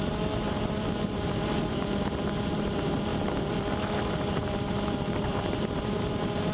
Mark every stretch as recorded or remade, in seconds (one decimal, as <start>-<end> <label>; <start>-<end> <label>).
0.0-3.1 remade; 3.1-4.1 recorded; 4.1-6.5 remade